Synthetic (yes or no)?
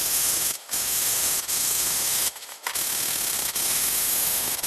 yes